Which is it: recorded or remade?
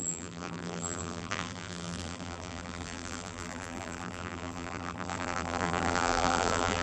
remade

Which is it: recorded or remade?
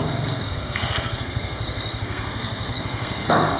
remade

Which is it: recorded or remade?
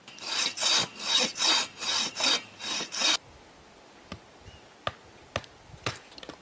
recorded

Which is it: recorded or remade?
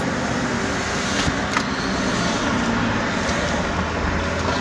recorded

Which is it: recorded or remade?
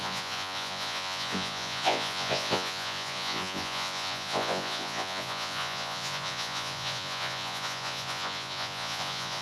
remade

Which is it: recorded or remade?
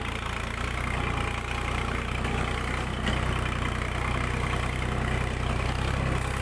recorded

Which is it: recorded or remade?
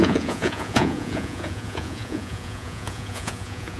remade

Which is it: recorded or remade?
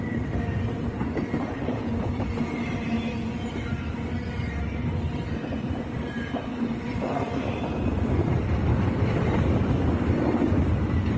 recorded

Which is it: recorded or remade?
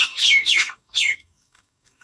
remade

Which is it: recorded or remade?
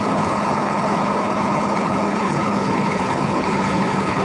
remade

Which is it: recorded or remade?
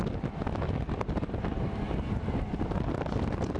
recorded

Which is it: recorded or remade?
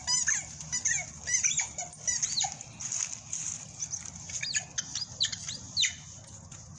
recorded